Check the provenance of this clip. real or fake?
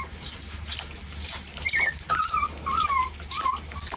real